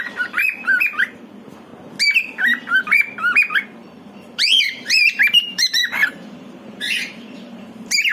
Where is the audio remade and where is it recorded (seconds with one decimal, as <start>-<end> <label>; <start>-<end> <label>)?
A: 0.0-1.7 remade; 1.7-3.8 recorded; 3.8-8.1 remade